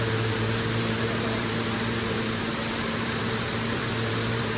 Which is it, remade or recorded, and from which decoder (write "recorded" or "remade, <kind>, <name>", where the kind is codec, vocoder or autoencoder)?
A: remade, vocoder, BigVGAN v2